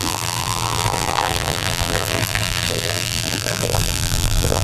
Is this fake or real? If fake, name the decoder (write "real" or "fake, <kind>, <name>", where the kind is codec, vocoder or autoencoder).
fake, vocoder, BigVGAN v2